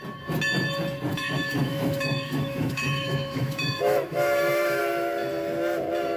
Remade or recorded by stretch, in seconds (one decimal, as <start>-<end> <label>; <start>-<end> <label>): 0.0-1.1 recorded; 1.1-4.8 remade; 4.8-6.2 recorded